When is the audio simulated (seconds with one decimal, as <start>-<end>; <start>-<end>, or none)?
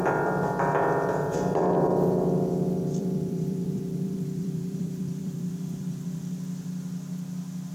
3.0-6.3